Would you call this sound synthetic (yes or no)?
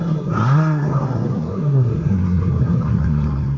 yes